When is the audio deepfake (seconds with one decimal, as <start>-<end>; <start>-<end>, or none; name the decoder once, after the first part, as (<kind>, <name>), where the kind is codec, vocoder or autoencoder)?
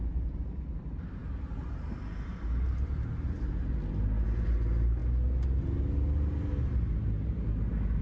none